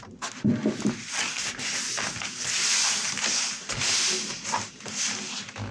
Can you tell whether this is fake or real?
real